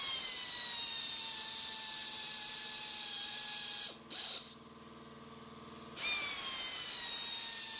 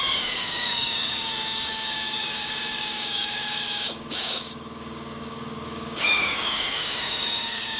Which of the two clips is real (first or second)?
first